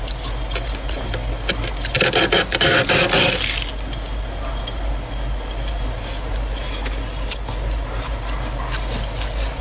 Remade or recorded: recorded